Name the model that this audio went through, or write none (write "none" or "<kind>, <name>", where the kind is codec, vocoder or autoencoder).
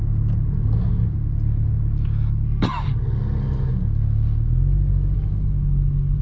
none